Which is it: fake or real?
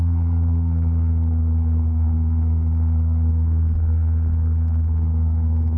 fake